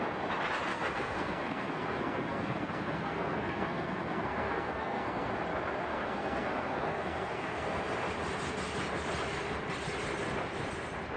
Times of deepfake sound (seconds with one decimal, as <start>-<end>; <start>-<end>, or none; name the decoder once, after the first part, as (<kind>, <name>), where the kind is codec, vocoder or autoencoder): 0.7-5.3 (codec, SNAC); 5.9-7.8